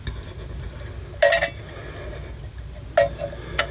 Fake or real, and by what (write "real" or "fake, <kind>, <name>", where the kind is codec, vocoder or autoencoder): real